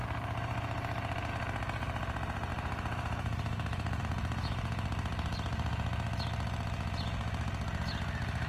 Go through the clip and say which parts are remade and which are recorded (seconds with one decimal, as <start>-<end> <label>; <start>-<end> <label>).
0.0-2.5 recorded; 2.5-4.0 remade; 4.0-8.5 recorded